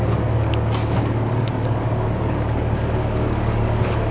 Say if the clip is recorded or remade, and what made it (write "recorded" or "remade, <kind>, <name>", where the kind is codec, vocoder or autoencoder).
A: remade, codec, DAC